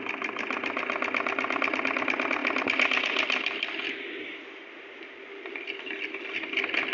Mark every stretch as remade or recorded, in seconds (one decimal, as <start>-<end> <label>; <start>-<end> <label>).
0.0-6.9 recorded